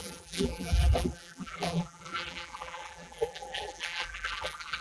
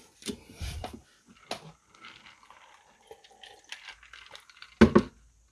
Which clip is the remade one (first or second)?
first